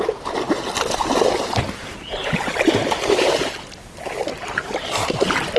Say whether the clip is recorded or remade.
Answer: recorded